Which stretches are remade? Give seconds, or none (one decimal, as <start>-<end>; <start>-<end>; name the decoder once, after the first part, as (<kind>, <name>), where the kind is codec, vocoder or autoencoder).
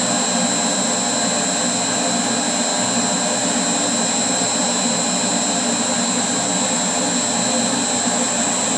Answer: none